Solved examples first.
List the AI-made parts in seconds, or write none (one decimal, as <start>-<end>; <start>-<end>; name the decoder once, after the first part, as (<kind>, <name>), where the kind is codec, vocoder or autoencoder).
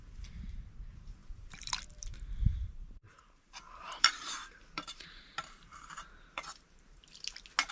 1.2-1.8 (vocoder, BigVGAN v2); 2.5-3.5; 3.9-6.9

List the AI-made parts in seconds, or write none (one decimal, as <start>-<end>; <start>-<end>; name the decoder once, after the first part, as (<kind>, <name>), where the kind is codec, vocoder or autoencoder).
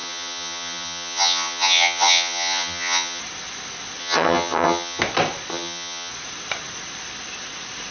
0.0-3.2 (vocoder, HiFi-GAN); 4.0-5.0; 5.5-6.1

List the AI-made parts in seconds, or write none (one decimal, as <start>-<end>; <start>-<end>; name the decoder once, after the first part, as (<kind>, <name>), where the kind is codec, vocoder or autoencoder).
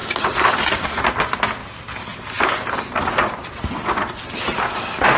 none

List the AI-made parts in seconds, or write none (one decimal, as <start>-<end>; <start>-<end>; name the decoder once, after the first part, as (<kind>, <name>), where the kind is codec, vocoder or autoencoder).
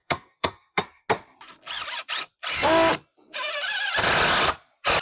0.0-0.8 (codec, SNAC)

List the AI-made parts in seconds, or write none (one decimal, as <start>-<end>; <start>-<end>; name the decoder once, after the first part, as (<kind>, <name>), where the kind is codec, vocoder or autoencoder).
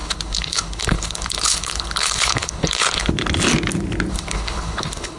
0.0-3.1 (codec, HILCodec); 4.1-5.2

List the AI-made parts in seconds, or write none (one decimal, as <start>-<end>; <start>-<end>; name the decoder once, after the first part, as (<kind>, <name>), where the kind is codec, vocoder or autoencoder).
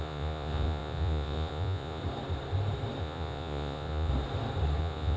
0.0-2.0 (vocoder, Vocos); 3.0-4.1; 4.8-5.2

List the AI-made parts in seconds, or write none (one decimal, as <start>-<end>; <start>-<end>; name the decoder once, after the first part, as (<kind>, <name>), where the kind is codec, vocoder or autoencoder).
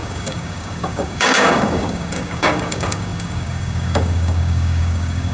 0.0-5.3 (codec, DAC)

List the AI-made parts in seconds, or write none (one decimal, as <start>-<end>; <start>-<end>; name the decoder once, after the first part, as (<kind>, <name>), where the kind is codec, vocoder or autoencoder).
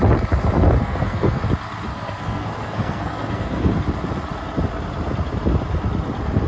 0.8-1.4 (codec, SNAC); 1.9-3.7